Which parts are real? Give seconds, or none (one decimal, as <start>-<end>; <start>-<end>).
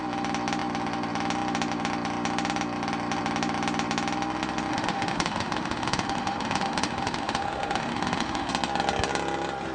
0.0-4.7; 8.5-9.7